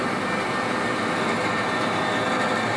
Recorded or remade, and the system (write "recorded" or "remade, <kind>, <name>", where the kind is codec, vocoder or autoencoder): recorded